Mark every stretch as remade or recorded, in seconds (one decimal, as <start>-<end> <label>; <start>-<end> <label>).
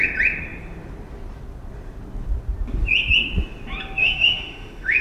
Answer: 0.0-4.0 recorded; 4.0-5.0 remade